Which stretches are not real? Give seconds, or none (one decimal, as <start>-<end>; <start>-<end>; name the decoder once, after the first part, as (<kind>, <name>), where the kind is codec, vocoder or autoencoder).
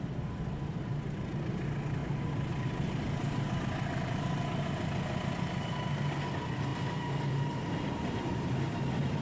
6.7-9.2 (vocoder, BigVGAN v2)